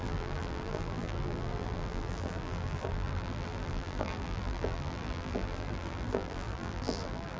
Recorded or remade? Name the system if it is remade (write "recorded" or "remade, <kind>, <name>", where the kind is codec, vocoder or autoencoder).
remade, vocoder, BigVGAN v2